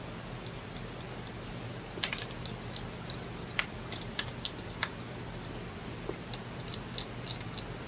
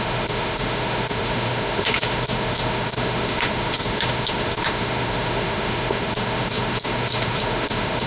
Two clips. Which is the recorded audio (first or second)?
first